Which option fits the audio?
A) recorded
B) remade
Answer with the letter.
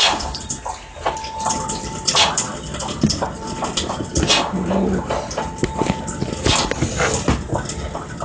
A